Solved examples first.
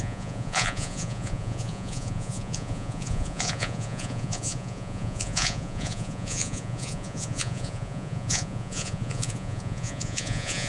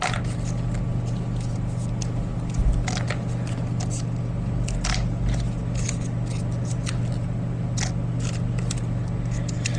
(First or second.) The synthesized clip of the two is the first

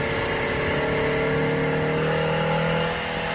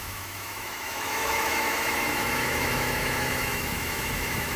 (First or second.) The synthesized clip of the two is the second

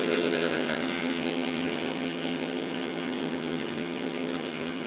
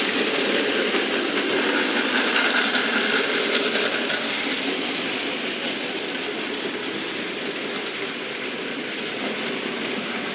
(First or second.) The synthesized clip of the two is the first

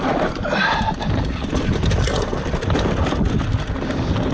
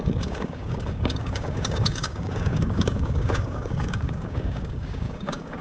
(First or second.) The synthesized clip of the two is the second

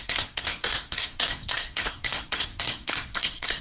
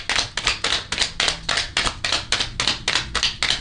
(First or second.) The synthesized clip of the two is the first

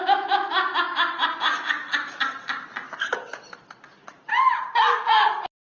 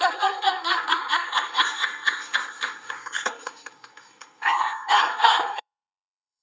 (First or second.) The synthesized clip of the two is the second